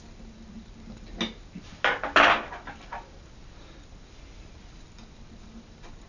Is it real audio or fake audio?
real